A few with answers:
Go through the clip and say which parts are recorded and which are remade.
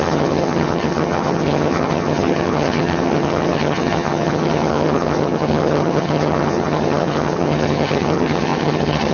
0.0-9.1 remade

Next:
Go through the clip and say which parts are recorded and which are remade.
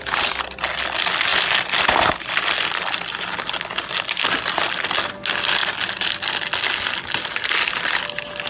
0.0-8.5 recorded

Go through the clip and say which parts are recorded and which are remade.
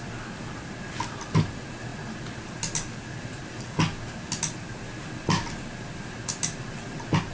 0.0-7.3 recorded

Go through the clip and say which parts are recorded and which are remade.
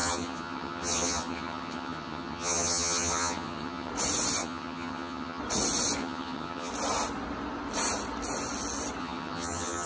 0.0-3.9 remade; 3.9-4.4 recorded; 4.4-5.4 remade; 5.4-6.0 recorded; 6.0-6.7 remade; 6.7-9.0 recorded; 9.0-9.9 remade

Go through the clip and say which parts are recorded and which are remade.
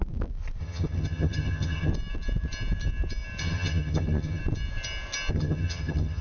0.0-0.6 recorded; 0.6-1.9 remade; 1.9-3.4 recorded; 3.4-4.4 remade; 4.4-5.3 recorded; 5.3-6.2 remade